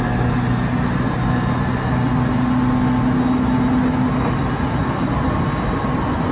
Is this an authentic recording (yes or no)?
yes